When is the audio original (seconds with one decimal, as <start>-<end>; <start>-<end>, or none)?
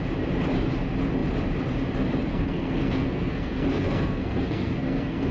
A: 0.0-2.3